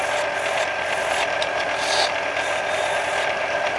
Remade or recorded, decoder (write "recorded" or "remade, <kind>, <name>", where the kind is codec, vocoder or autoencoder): recorded